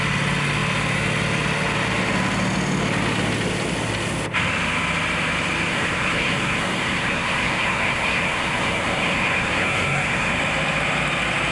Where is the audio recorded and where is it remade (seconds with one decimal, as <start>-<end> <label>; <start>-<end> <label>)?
0.0-5.7 recorded; 5.7-10.3 remade; 10.3-11.5 recorded